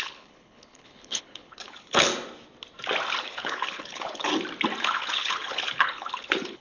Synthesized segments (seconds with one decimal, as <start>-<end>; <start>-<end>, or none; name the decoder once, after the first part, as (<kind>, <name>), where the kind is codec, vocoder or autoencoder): 0.0-2.1 (codec, HILCodec); 3.2-4.3; 4.8-6.6